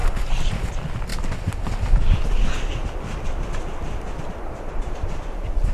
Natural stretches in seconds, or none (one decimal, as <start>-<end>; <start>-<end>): 0.0-0.7; 1.1-4.5